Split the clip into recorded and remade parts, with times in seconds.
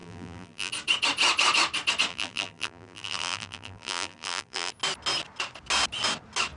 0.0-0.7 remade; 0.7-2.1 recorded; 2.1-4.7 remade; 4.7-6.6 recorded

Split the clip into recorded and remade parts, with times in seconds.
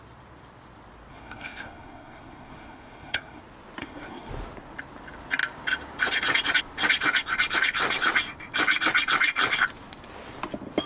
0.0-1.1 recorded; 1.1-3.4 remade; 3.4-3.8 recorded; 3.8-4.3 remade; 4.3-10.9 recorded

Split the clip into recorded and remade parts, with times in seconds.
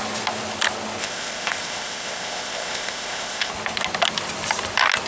0.0-1.0 recorded; 1.0-3.5 remade; 3.5-5.1 recorded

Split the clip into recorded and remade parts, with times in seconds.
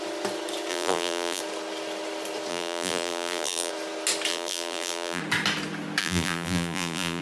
0.0-0.7 recorded; 0.7-1.4 remade; 1.4-2.5 recorded; 2.5-3.7 remade; 3.7-4.3 recorded; 4.3-5.2 remade; 5.2-6.0 recorded; 6.0-7.2 remade